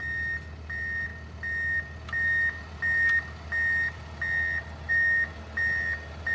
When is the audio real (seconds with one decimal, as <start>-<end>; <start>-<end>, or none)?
0.0-6.3